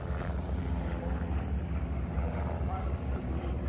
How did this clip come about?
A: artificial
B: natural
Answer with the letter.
A